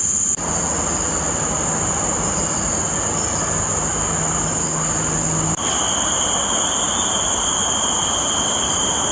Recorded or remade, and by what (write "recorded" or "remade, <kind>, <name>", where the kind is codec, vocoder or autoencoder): recorded